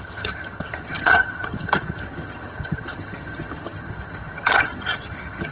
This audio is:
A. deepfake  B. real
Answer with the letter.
A